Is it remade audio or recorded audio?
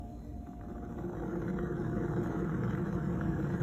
remade